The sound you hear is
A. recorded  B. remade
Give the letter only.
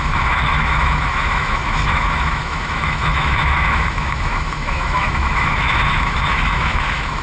B